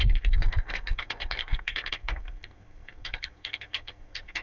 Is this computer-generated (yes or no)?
yes